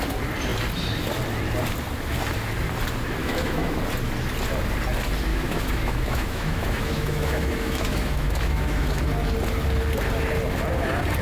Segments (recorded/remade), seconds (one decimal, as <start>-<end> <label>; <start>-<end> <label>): 0.0-3.2 recorded; 3.2-3.8 remade; 3.8-5.3 recorded; 5.3-9.0 remade; 9.0-11.2 recorded